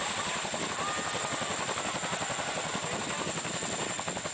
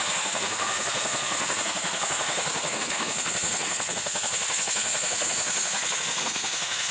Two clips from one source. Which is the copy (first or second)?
second